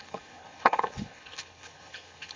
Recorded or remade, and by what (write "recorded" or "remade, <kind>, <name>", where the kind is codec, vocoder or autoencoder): remade, codec, HILCodec